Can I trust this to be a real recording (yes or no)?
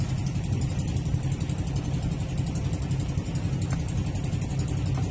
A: yes